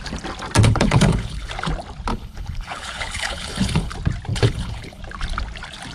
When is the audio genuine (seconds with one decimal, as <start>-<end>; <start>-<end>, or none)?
0.0-0.6; 1.5-2.1; 3.9-4.3; 5.0-5.9